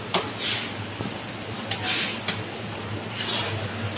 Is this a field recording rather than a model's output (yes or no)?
yes